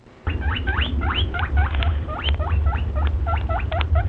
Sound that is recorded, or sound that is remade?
remade